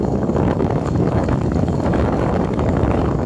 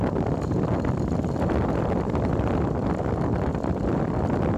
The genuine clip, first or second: second